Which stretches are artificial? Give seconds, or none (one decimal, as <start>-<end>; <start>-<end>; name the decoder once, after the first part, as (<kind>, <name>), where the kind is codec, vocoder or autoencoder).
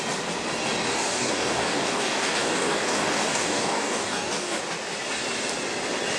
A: 0.9-4.6 (codec, DAC)